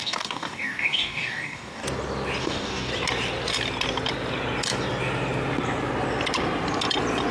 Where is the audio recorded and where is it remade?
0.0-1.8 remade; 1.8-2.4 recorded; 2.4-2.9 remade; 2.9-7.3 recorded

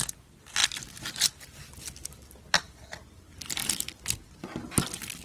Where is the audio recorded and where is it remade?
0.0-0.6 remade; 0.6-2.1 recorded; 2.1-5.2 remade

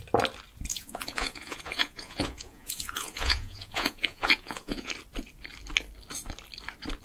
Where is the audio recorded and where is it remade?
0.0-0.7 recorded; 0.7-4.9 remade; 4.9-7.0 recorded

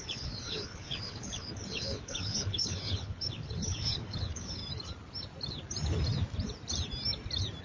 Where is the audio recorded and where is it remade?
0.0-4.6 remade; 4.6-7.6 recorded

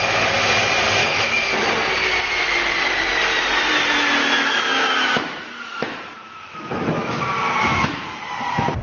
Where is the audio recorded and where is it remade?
0.0-1.0 recorded; 1.0-1.6 remade; 1.6-4.2 recorded; 4.2-7.2 remade; 7.2-7.7 recorded; 7.7-8.2 remade; 8.2-8.8 recorded

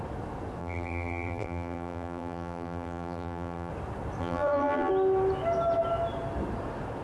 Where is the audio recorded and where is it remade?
0.0-0.6 recorded; 0.6-3.7 remade; 3.7-4.2 recorded; 4.2-4.9 remade; 4.9-7.0 recorded